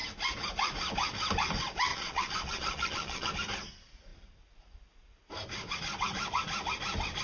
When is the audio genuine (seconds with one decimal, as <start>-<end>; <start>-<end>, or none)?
0.0-1.9; 3.3-7.2